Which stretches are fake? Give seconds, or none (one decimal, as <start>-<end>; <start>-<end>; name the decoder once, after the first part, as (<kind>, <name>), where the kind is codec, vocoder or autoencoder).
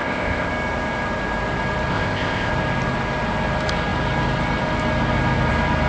0.0-0.5 (codec, ZipCodec); 1.9-2.5